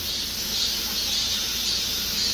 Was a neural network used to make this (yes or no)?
no